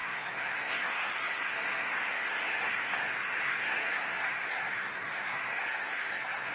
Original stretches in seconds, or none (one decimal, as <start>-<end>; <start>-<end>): none